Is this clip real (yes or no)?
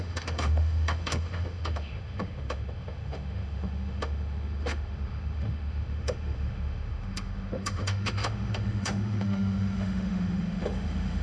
no